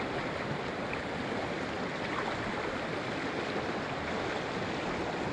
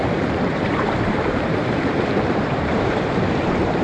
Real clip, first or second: first